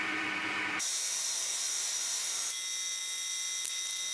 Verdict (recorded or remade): recorded